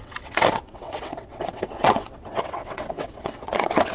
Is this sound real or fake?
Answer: fake